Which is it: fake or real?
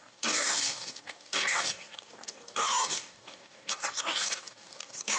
fake